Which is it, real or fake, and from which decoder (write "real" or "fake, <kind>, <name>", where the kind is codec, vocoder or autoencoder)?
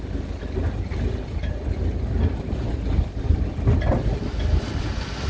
real